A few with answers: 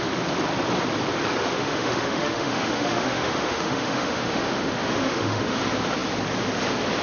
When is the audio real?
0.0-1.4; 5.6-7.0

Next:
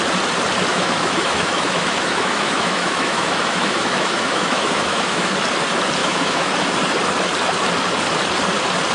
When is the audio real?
0.0-0.7; 5.3-6.0; 6.5-8.9

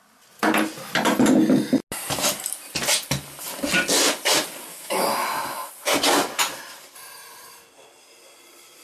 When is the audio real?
0.0-4.7; 5.7-8.8

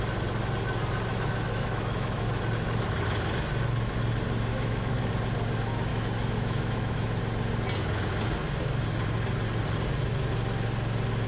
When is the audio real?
0.0-1.1; 2.4-4.5; 5.1-5.9; 7.2-11.3